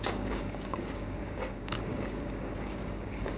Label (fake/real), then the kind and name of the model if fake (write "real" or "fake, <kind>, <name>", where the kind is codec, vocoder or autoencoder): fake, codec, DAC